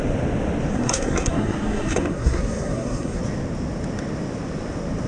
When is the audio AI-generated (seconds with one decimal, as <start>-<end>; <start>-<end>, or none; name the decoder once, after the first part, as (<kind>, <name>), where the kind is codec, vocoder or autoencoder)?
0.7-3.2 (codec, SNAC)